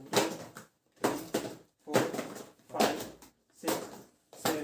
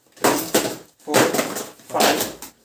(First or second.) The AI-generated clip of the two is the first